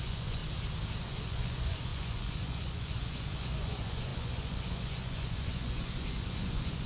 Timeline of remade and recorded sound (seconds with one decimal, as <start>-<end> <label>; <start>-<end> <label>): 0.0-0.4 remade; 0.4-1.0 recorded; 1.0-6.9 remade